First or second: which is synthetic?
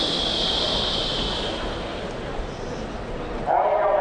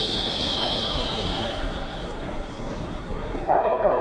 second